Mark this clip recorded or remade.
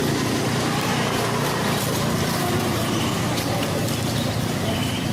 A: remade